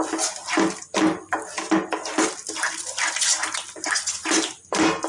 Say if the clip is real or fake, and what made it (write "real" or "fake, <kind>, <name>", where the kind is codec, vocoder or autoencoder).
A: real